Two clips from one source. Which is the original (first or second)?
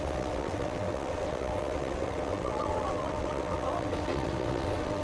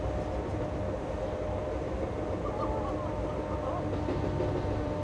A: second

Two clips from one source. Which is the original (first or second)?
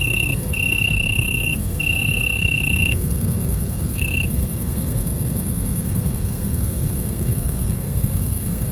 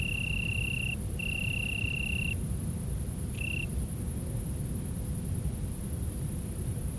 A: second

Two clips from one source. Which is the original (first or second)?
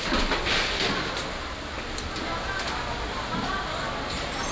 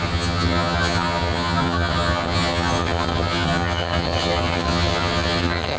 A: first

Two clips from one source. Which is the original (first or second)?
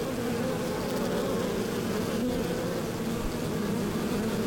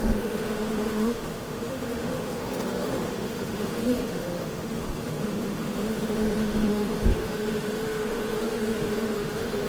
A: first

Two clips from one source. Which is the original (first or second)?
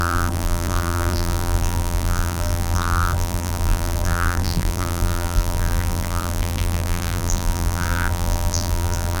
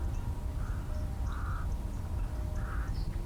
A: second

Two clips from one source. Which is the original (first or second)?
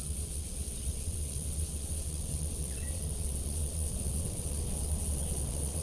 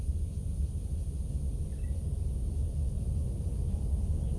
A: second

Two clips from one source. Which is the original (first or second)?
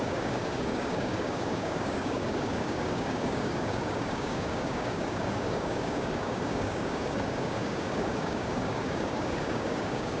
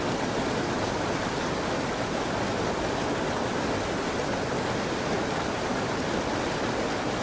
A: second